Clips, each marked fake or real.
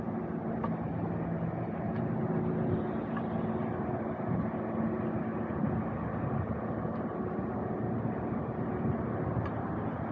real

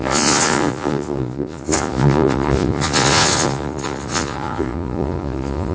fake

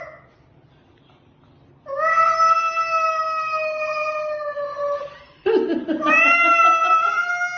real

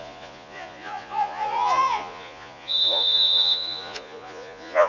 fake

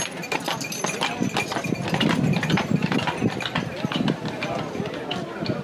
real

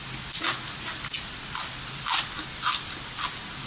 real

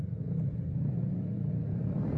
real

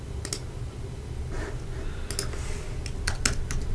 real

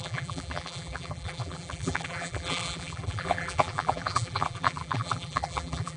fake